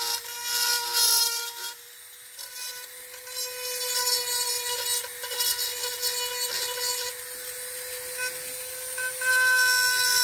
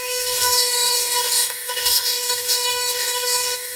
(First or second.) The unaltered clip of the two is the first